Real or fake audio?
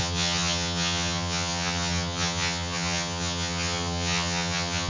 fake